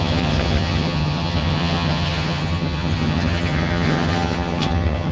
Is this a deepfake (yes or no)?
yes